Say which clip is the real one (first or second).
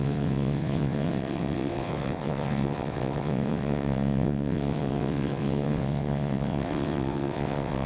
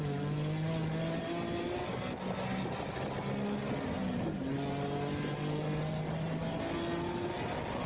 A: second